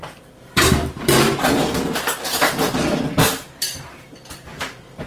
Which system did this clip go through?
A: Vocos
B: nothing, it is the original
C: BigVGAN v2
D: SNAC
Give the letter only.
C